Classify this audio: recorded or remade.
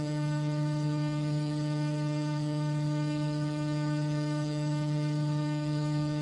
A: remade